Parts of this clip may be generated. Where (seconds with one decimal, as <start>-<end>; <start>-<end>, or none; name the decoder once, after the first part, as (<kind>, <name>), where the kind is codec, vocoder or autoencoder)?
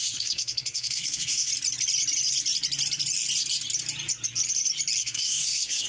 0.0-1.5 (codec, SNAC); 5.0-5.9